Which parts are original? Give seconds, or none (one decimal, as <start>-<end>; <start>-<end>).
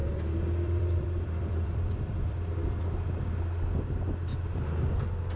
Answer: 3.2-5.4